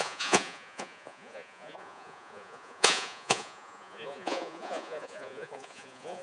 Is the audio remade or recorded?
remade